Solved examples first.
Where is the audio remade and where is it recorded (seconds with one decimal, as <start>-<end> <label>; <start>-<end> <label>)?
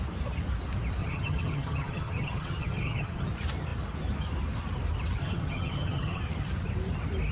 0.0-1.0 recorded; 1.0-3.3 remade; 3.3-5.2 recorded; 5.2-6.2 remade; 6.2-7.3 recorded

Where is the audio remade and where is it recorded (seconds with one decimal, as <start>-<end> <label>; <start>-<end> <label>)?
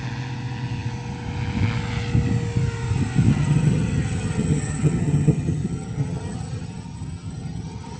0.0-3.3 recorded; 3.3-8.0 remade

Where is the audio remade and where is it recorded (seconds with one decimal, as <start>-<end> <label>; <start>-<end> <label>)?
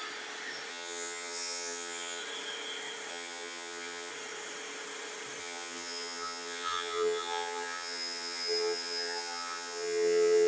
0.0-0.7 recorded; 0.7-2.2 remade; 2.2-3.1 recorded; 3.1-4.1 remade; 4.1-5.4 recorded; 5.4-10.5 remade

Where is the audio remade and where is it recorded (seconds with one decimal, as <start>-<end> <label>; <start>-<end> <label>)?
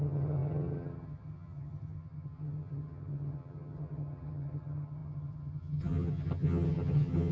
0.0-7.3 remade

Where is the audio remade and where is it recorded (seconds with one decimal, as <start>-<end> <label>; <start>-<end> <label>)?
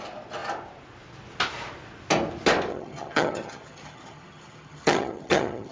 0.0-2.7 recorded; 2.7-5.7 remade